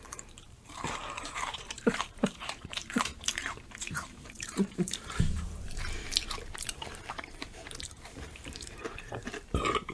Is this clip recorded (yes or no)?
no